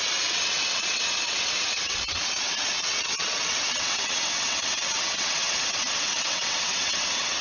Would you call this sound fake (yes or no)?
yes